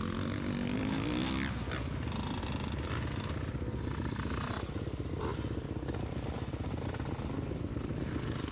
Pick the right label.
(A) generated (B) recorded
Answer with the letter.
B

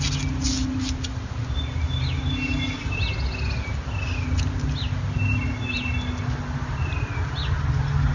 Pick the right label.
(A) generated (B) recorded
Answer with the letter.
B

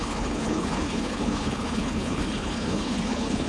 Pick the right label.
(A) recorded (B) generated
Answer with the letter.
B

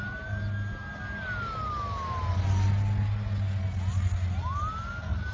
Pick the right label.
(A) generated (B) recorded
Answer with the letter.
B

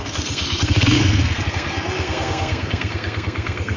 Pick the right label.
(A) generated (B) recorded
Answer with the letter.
A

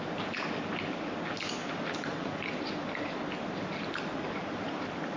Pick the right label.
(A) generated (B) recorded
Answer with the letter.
B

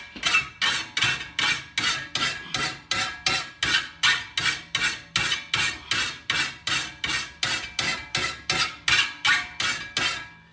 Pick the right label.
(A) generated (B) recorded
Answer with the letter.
B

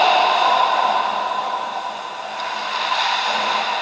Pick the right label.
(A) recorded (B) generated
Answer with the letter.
B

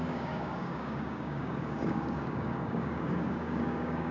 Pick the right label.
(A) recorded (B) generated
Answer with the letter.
B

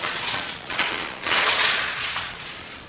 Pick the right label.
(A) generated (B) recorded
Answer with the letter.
A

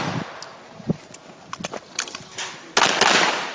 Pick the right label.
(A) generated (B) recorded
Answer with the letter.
B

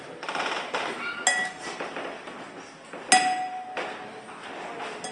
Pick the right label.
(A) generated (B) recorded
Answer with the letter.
B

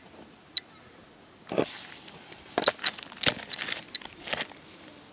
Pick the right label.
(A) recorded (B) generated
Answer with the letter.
A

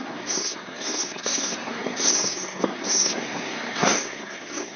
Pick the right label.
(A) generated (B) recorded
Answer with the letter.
A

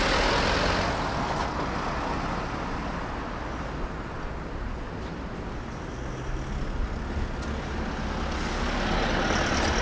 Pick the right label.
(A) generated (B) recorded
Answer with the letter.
B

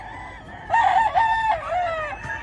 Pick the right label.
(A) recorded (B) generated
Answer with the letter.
A